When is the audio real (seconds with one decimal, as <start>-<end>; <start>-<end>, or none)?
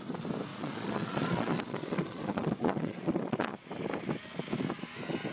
0.0-0.5; 3.7-5.3